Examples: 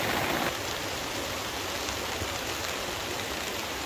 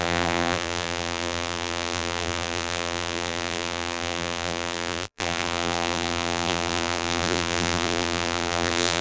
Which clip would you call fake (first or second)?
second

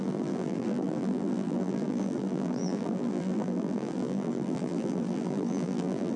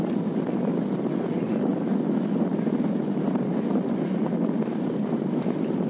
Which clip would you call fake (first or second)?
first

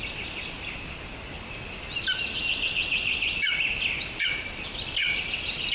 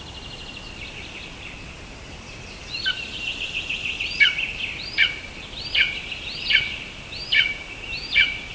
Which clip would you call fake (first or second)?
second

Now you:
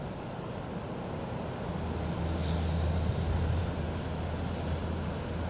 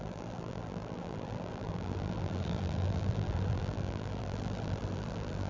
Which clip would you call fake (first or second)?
second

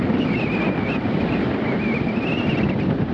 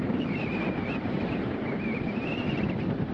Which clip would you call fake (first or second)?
second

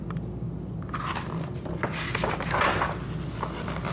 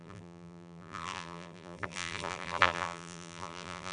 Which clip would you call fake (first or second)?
second